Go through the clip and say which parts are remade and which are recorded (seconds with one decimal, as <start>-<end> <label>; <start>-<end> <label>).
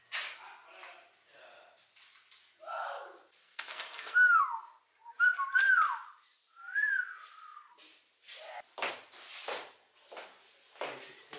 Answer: 0.0-3.4 recorded; 3.4-4.4 remade; 4.4-11.4 recorded